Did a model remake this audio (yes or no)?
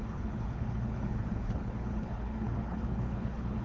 yes